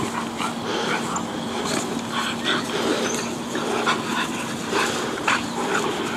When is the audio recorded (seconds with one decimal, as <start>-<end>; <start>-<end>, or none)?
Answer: 0.0-4.1; 5.8-6.2